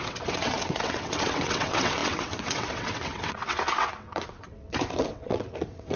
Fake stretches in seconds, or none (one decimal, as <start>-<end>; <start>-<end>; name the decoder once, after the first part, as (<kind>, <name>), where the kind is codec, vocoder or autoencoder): 0.0-6.0 (vocoder, WaveNeXt)